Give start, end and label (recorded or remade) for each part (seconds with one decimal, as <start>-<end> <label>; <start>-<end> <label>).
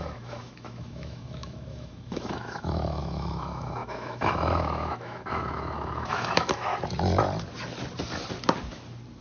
0.0-6.7 remade; 6.7-9.2 recorded